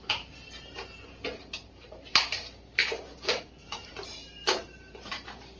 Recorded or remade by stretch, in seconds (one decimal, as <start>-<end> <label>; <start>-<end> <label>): 0.0-1.4 recorded; 1.4-2.1 remade; 2.1-2.8 recorded; 2.8-5.1 remade; 5.1-5.6 recorded